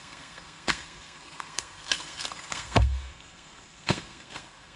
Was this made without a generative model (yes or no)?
no